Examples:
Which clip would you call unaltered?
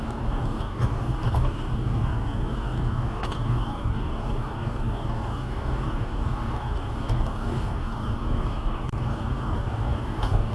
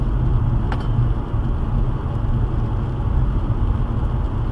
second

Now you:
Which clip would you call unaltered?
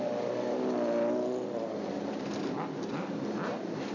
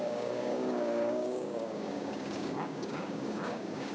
first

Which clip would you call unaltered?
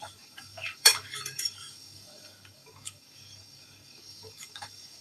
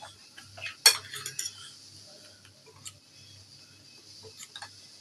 second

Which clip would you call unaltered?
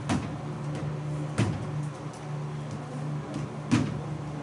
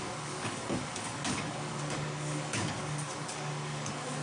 first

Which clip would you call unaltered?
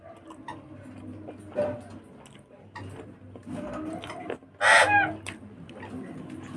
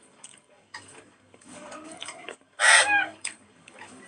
first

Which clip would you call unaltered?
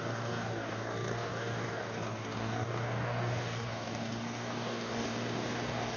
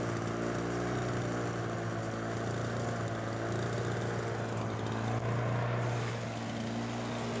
second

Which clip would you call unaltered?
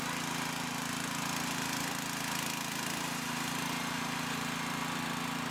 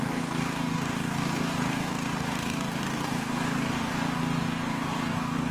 first